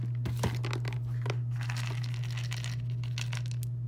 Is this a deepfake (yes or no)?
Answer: no